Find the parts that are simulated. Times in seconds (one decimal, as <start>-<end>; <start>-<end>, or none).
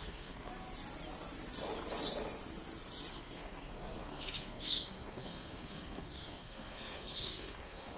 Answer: 0.0-0.5; 3.1-8.0